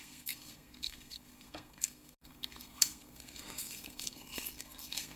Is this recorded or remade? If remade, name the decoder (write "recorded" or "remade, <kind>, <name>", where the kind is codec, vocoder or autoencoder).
remade, codec, SNAC